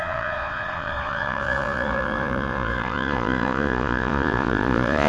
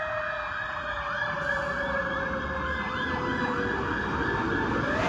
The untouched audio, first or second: second